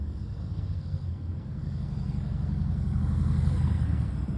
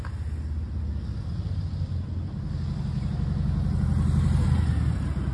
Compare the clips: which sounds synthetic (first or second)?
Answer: first